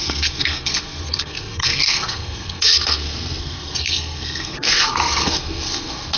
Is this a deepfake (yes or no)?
yes